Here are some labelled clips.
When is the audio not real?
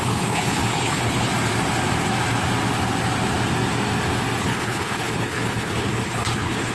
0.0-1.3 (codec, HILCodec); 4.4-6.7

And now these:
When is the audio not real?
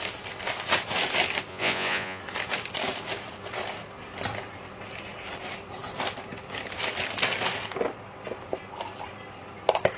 1.5-2.2 (vocoder, Vocos)